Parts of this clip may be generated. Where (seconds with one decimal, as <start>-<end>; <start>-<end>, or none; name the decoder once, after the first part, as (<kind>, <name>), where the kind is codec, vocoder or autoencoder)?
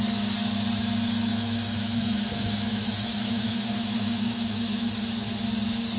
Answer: 1.3-4.9 (autoencoder, DAC-VAE)